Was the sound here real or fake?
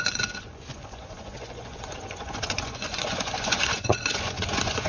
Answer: fake